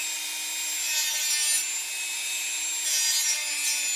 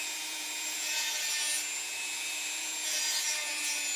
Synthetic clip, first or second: second